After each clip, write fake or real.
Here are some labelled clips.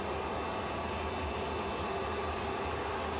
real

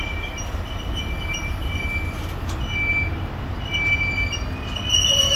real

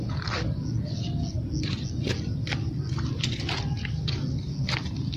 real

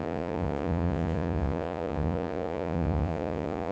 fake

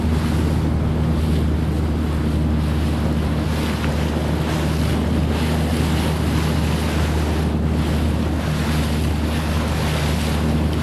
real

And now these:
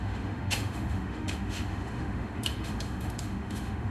fake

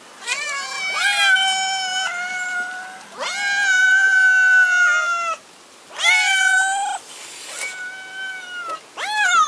real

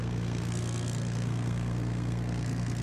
fake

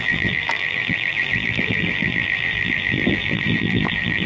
fake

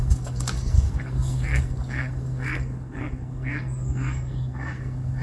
fake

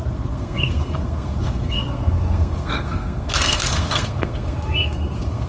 fake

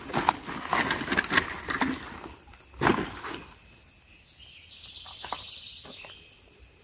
real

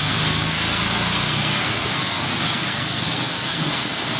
fake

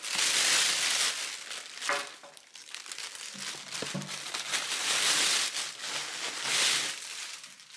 real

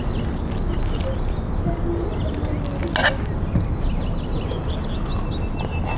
real